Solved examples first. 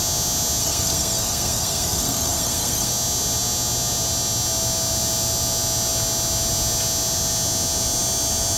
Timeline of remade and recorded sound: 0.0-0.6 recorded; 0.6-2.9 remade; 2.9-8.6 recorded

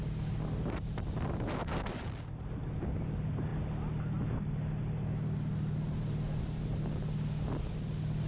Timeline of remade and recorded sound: 0.0-8.3 recorded

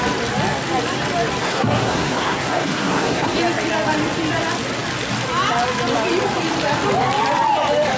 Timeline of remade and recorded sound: 0.0-1.4 recorded; 1.4-3.4 remade; 3.4-8.0 recorded

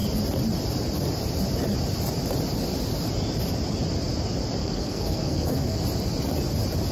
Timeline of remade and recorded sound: 0.0-4.6 recorded; 4.6-5.8 remade; 5.8-6.9 recorded

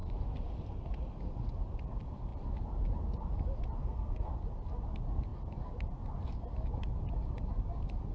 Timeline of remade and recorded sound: 0.0-3.8 recorded; 3.8-4.3 remade; 4.3-8.1 recorded